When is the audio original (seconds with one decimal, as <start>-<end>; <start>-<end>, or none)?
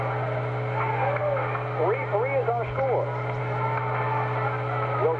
0.0-5.2